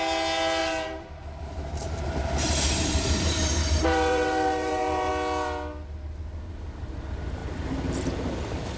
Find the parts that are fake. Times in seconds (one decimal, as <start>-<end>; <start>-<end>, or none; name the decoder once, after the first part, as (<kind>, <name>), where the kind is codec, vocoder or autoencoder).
0.6-5.1 (vocoder, BigVGAN v2)